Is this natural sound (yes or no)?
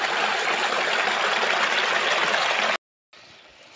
yes